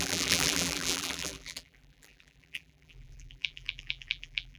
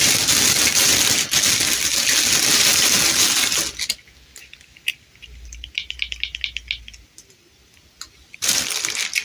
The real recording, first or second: second